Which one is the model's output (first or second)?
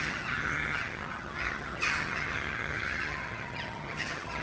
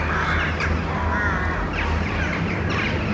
first